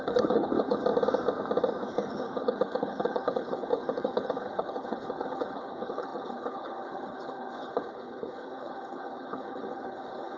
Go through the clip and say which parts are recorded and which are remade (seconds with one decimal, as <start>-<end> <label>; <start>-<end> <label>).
0.0-0.8 remade; 0.8-1.9 recorded; 1.9-10.4 remade